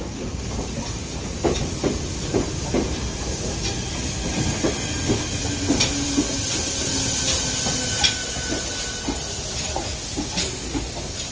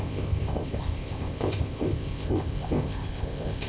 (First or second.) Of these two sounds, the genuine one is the first